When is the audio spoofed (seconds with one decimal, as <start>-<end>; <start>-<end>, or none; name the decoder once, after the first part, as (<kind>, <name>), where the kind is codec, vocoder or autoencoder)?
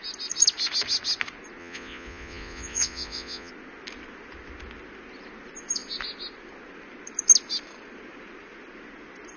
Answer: 1.6-3.5 (vocoder, Vocos)